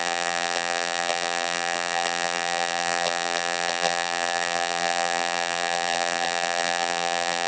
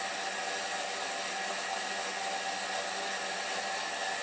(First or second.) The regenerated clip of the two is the first